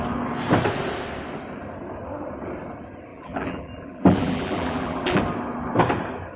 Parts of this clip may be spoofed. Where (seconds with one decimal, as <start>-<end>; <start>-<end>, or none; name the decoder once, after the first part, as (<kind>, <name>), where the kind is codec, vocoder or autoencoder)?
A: 3.1-5.2 (vocoder, BigVGAN v2)